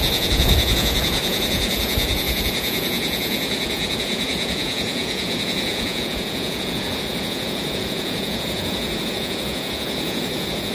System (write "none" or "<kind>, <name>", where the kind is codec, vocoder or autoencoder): vocoder, Vocos